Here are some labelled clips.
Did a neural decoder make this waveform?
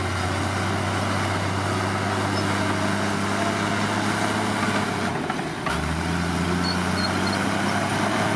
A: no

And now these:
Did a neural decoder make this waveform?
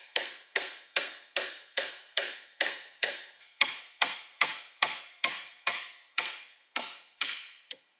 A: yes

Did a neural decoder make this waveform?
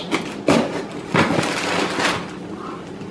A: no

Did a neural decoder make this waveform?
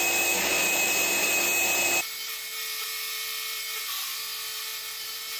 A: yes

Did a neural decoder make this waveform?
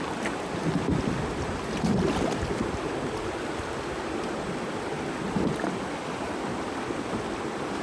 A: no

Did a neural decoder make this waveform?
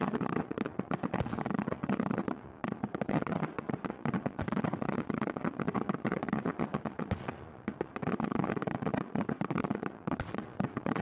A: yes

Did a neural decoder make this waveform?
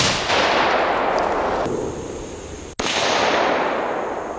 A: no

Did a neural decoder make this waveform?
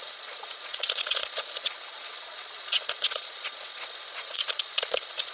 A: yes